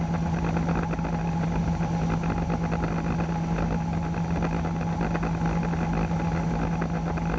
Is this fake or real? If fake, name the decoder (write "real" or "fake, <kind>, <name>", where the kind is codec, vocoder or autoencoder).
real